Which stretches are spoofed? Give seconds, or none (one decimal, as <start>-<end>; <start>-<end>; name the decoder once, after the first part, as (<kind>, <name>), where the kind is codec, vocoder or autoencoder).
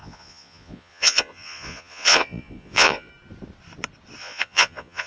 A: 0.0-3.1 (vocoder, Vocos); 4.2-5.1